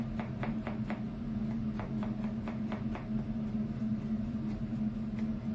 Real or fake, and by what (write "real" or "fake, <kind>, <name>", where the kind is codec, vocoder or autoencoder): real